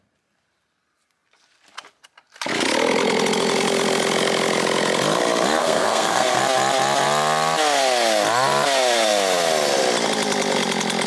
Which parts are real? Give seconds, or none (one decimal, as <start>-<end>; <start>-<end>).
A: 0.0-5.6; 6.4-11.1